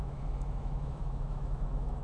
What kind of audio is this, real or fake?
fake